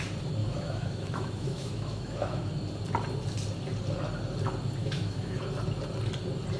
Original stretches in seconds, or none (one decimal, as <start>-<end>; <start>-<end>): 0.0-0.4; 2.5-4.8; 5.4-6.6